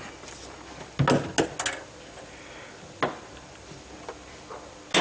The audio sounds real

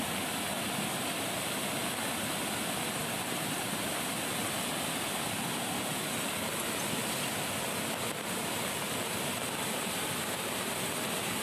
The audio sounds real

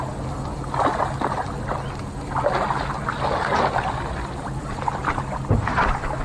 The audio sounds real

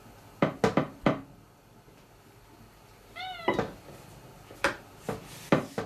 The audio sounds real